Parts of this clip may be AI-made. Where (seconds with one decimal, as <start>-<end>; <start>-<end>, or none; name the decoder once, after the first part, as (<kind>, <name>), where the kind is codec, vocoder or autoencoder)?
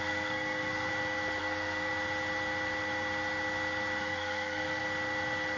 0.0-0.9 (codec, SNAC); 1.4-1.9; 4.0-4.8